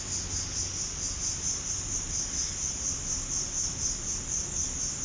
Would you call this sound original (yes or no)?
yes